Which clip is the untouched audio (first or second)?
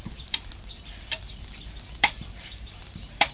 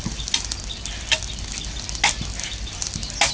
second